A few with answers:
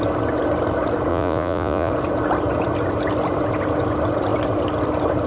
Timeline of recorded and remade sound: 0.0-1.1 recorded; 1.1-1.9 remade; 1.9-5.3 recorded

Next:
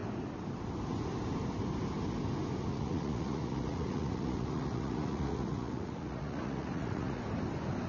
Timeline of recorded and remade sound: 0.0-2.7 recorded; 2.7-7.2 remade; 7.2-7.9 recorded